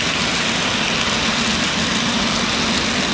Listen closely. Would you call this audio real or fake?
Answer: real